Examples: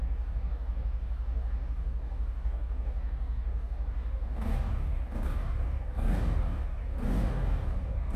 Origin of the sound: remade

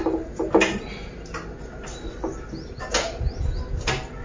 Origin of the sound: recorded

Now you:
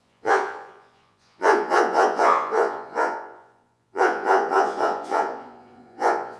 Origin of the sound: remade